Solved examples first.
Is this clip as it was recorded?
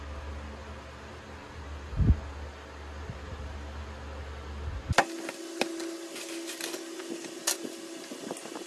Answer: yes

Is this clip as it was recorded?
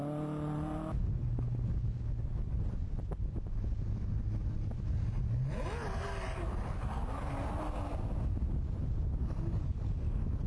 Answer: yes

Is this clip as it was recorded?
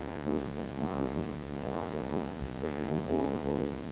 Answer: no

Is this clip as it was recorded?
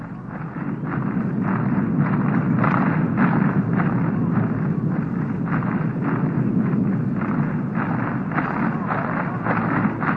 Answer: yes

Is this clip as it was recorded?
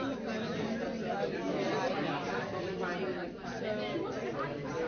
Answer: yes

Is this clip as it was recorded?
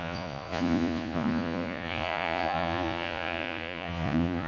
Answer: no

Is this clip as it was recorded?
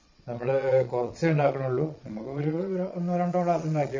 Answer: no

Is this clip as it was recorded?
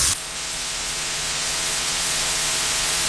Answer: no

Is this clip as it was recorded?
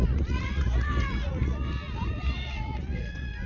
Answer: no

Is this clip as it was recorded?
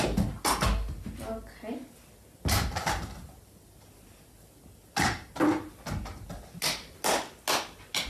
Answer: yes